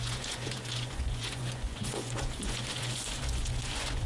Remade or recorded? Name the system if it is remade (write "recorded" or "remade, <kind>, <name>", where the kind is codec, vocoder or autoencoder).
remade, vocoder, Vocos